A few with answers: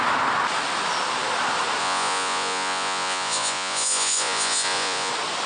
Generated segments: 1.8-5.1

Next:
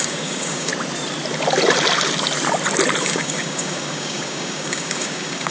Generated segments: 0.0-0.7; 3.0-5.5